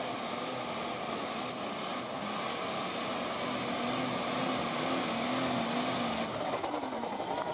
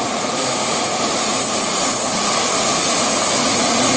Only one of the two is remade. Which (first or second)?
second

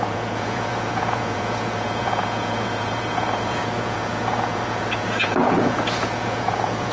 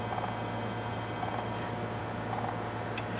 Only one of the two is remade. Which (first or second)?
first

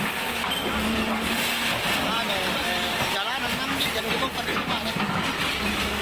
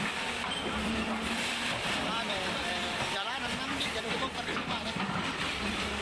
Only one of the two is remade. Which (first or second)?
second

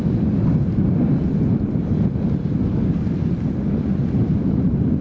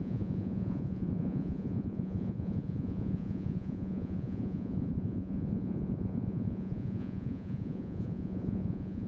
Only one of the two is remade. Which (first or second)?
second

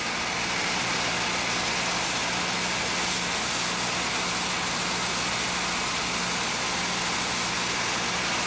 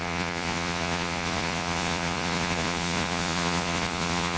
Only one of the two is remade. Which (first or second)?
second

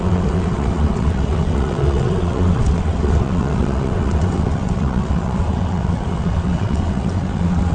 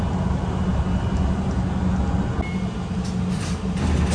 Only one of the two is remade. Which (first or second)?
first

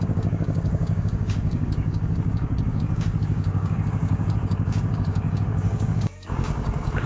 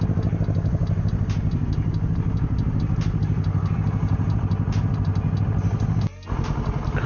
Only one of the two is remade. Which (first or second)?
first